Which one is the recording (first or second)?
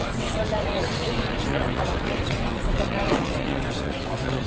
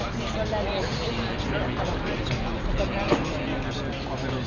second